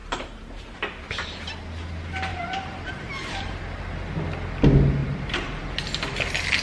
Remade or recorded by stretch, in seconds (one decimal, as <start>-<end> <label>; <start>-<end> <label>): 0.0-0.6 remade; 0.6-2.3 recorded; 2.3-3.6 remade; 3.6-5.0 recorded; 5.0-5.6 remade; 5.6-6.6 recorded